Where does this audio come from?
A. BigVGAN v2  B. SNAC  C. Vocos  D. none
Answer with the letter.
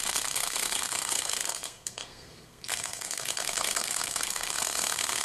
B